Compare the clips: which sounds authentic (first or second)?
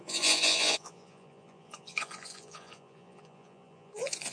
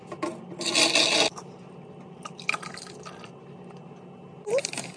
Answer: second